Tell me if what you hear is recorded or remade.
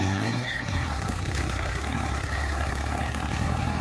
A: remade